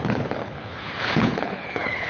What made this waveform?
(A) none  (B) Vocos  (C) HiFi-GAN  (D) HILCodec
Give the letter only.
D